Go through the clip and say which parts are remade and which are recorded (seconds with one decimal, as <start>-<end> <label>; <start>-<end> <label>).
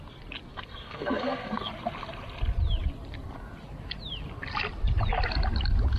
0.0-0.5 recorded; 0.5-1.7 remade; 1.7-6.0 recorded